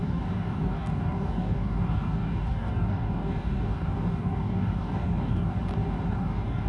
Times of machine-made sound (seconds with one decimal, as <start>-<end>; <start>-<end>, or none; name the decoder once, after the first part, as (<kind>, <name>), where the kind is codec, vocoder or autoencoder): 0.0-5.5 (codec, DAC); 6.1-6.7